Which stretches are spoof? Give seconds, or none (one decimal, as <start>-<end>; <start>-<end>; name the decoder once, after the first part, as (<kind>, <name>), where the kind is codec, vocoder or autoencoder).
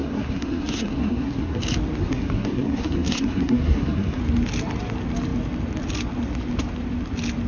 0.0-1.6 (codec, SNAC); 2.0-4.2